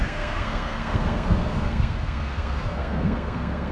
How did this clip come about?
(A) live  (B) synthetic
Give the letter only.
B